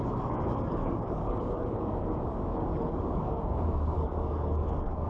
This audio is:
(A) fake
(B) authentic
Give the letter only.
A